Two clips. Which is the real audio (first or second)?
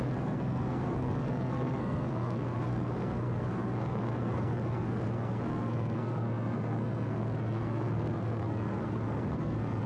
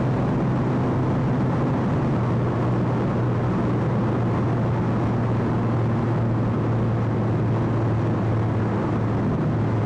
second